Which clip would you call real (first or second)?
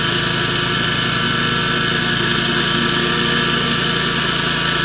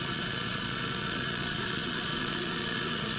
first